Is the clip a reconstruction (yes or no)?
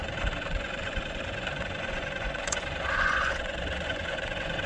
yes